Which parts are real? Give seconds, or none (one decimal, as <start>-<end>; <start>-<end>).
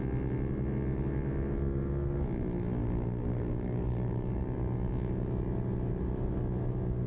0.0-2.8; 4.4-7.1